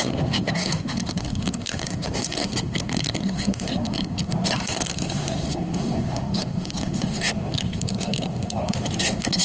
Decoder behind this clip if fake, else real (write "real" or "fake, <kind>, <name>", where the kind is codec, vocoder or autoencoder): fake, codec, SNAC